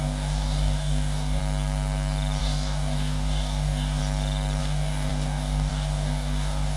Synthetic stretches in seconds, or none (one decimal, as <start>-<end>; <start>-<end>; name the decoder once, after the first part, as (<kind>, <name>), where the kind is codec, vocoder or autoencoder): 0.0-1.4 (codec, DAC); 2.4-4.0; 4.6-6.8

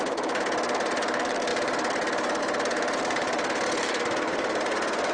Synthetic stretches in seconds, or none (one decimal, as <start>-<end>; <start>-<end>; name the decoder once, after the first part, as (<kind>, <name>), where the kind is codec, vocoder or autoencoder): 0.0-5.1 (vocoder, BigVGAN v2)

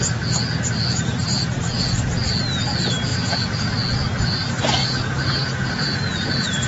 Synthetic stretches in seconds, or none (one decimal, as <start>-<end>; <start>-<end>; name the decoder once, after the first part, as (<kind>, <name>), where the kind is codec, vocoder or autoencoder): 3.1-3.7 (vocoder, Vocos); 4.8-6.7

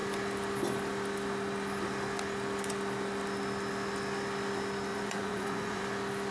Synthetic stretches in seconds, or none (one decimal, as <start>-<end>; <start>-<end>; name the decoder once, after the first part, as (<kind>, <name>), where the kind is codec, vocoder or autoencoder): 4.9-5.8 (vocoder, Vocos)

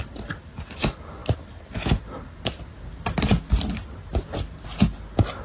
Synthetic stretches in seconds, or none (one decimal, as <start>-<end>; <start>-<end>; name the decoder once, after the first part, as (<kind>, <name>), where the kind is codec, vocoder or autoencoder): none

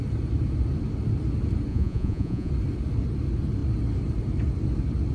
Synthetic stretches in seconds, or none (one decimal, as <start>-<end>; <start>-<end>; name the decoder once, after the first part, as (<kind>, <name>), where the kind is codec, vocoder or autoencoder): 1.7-2.5 (vocoder, Vocos)